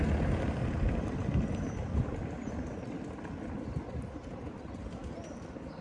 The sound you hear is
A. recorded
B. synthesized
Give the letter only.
A